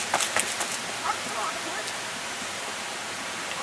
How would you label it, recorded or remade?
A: recorded